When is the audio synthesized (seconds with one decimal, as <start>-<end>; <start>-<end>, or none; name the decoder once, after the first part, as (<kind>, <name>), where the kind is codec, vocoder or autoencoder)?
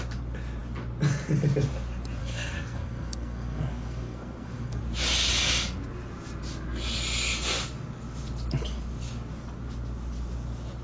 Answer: 2.2-4.8 (codec, SNAC)